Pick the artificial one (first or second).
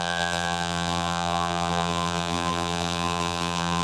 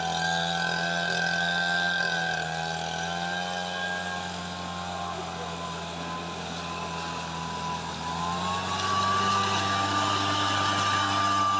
first